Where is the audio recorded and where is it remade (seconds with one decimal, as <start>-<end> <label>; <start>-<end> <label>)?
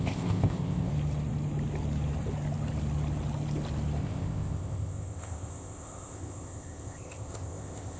0.0-0.9 remade; 0.9-4.0 recorded; 4.0-8.0 remade